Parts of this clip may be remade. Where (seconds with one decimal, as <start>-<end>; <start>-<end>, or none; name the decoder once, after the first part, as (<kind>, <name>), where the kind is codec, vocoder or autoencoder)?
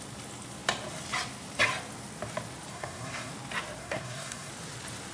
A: 2.7-3.3 (codec, SNAC); 3.8-4.5